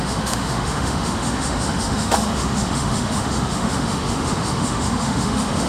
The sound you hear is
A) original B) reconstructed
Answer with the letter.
B